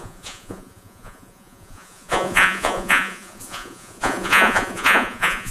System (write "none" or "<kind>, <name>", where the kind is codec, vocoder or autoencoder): vocoder, Vocos